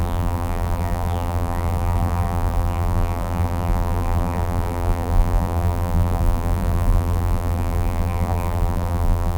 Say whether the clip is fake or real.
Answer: fake